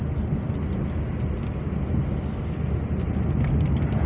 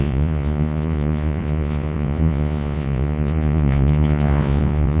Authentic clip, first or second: first